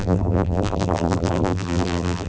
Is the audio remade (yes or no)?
yes